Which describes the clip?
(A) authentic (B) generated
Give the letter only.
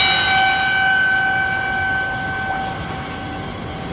A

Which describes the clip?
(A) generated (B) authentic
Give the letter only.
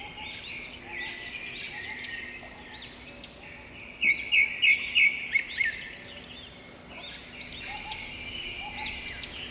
B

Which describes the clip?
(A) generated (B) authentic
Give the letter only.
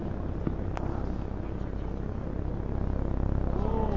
B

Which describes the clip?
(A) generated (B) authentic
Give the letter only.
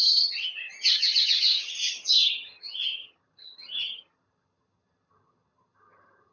A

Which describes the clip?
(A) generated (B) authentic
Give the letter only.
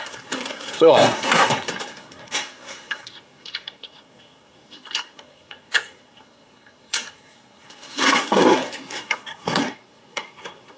A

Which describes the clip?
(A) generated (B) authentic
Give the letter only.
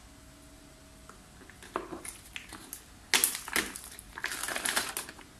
B